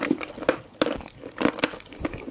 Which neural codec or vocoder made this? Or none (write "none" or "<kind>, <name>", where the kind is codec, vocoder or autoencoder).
none